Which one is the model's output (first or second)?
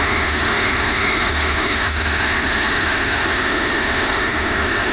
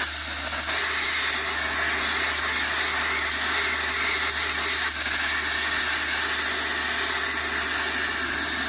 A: first